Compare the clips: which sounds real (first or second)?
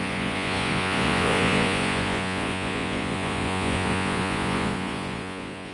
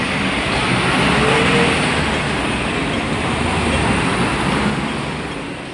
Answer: second